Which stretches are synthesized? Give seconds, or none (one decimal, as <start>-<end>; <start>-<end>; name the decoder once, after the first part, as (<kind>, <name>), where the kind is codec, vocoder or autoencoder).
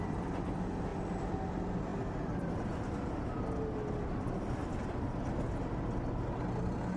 none